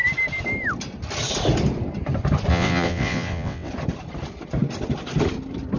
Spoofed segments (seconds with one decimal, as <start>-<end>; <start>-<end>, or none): 2.5-3.7